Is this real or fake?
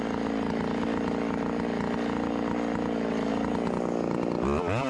real